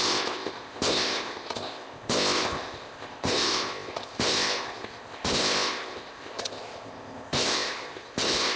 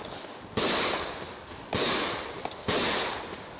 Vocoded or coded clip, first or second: first